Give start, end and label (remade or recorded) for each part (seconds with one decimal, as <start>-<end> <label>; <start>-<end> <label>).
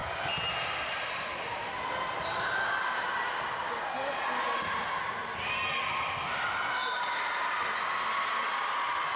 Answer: 0.0-3.7 remade; 3.7-6.8 recorded; 6.8-7.7 remade; 7.7-9.2 recorded